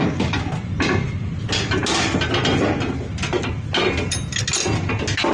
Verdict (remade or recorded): recorded